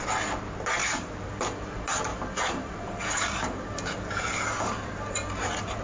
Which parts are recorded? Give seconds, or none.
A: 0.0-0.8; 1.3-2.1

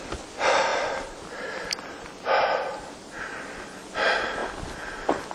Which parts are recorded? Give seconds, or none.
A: 0.0-5.3

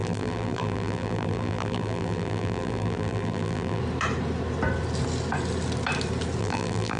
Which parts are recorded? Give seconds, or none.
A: 3.8-6.4

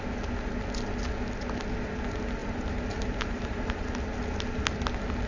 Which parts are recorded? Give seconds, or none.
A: 0.0-2.4; 4.0-5.3

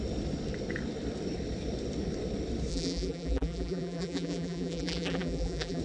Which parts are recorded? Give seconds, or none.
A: 0.0-2.7

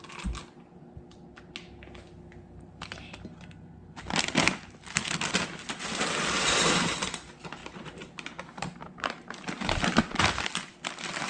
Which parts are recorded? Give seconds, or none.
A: 0.0-7.6; 9.3-11.3

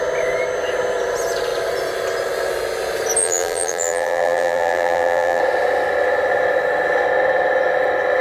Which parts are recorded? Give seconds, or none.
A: 0.0-3.2; 5.4-8.2